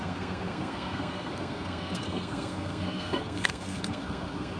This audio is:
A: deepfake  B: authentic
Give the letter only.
A